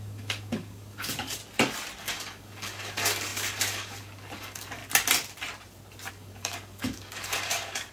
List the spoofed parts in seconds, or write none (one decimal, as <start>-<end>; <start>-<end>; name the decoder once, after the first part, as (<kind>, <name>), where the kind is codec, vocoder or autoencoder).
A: 0.0-1.4 (codec, DAC); 2.0-4.8; 6.1-7.9